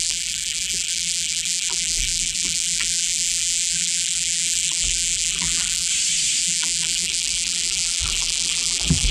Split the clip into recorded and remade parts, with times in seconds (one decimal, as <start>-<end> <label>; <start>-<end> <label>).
0.0-5.9 remade; 5.9-6.4 recorded; 6.4-9.1 remade